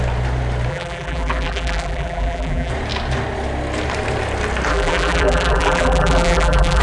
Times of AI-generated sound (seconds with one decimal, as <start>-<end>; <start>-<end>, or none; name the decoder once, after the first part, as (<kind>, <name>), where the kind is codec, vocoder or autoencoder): 0.7-2.7 (vocoder, BigVGAN v2); 4.7-6.8